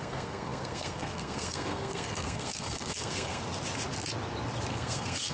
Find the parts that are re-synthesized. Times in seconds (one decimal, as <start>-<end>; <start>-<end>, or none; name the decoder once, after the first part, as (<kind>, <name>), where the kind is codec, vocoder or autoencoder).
0.0-3.4 (codec, SNAC); 4.7-5.3